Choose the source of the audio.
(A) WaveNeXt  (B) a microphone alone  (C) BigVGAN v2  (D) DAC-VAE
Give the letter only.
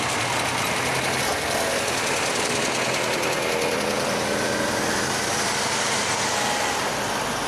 B